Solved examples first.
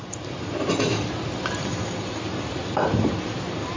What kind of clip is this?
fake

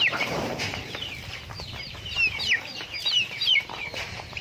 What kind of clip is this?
fake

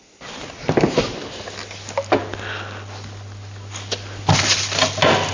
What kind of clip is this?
real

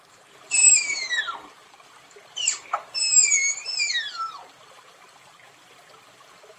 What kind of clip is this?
fake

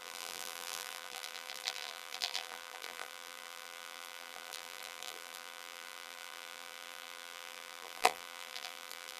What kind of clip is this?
fake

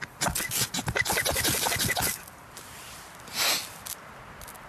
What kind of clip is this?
real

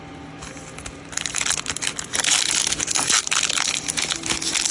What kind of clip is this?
real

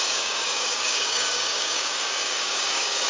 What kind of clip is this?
fake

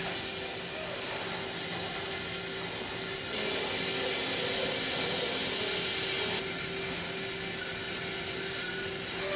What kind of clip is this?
real